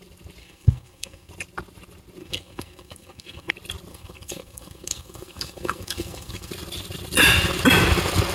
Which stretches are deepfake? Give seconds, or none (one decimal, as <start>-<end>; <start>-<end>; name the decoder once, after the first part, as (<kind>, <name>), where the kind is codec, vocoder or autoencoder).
0.4-1.3 (codec, SNAC); 2.2-3.5; 3.9-6.5